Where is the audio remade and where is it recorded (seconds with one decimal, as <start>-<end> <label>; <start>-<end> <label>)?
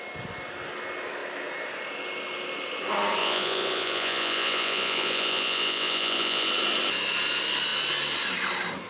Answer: 0.0-3.2 recorded; 3.2-6.5 remade; 6.5-8.9 recorded